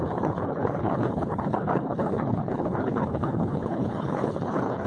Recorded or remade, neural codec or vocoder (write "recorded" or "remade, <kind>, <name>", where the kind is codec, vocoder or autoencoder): remade, codec, HILCodec